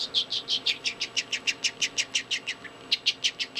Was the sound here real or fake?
real